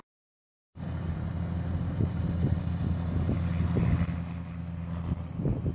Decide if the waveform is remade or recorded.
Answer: recorded